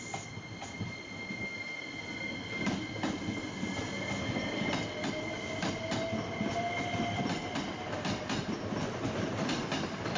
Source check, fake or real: real